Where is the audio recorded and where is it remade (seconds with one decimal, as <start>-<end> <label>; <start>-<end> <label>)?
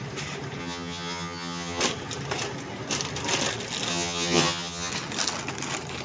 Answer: 0.0-0.6 recorded; 0.6-1.8 remade; 1.8-3.9 recorded; 3.9-4.9 remade; 4.9-6.0 recorded